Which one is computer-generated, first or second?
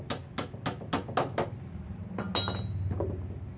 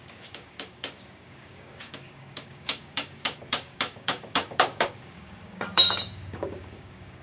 second